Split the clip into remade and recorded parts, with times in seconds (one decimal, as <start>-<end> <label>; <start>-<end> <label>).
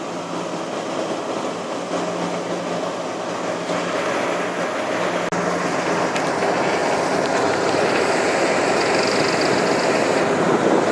0.0-6.8 recorded; 6.8-8.6 remade; 8.6-10.9 recorded